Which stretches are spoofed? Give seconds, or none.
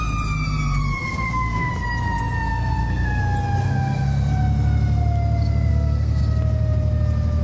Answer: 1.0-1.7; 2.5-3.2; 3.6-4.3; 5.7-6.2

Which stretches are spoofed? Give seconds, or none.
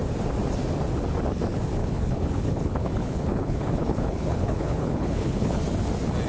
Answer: 1.8-5.6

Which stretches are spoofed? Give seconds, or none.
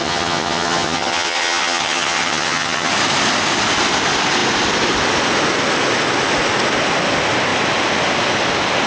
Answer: 0.0-2.9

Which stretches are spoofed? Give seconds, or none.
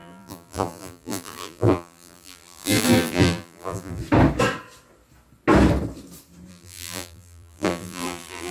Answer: 0.0-4.0; 6.5-8.5